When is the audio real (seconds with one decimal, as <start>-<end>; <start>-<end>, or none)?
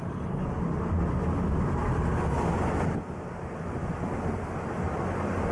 0.0-1.8; 2.6-5.5